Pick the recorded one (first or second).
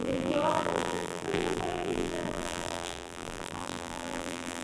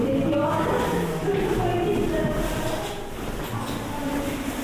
second